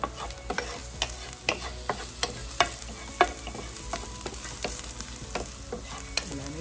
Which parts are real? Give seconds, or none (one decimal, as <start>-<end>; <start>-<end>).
0.0-6.6